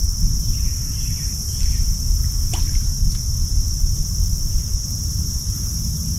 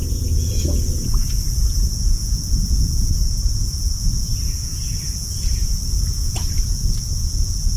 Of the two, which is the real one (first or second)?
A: first